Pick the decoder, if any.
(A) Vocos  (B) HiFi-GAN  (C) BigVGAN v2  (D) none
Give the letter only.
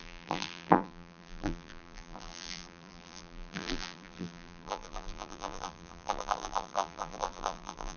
C